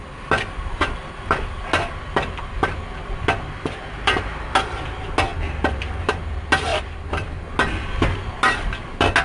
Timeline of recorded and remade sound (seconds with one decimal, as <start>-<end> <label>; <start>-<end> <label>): 0.0-9.2 recorded